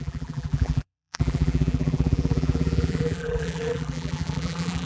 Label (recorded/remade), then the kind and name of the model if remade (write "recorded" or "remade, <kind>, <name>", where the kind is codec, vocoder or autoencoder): remade, vocoder, BigVGAN v2